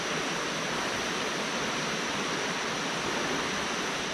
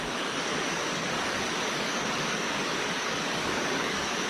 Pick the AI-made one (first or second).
second